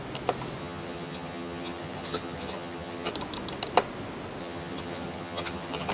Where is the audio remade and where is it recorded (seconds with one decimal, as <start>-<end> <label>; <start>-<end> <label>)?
0.0-0.6 recorded; 0.6-3.1 remade; 3.1-4.4 recorded; 4.4-5.9 remade